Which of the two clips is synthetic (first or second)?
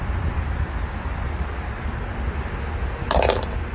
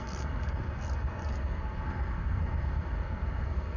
second